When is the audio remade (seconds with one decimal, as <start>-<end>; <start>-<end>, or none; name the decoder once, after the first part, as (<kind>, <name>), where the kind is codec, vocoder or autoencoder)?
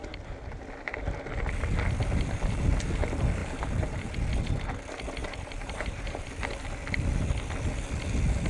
3.4-4.1 (vocoder, BigVGAN v2); 5.2-6.3